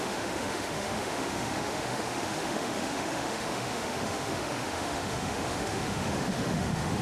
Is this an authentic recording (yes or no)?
no